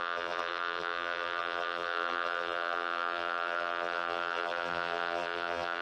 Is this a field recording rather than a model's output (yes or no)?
no